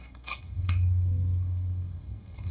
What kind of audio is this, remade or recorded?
remade